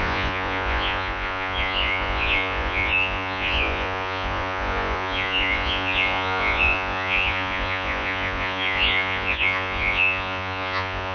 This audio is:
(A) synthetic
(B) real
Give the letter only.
A